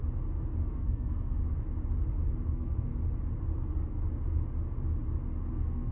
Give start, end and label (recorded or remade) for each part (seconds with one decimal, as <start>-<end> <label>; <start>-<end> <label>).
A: 0.0-0.7 recorded; 0.7-1.4 remade; 1.4-2.5 recorded; 2.5-2.9 remade; 2.9-3.6 recorded; 3.6-4.0 remade; 4.0-5.5 recorded; 5.5-5.9 remade